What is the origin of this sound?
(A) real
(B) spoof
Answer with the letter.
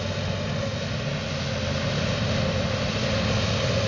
A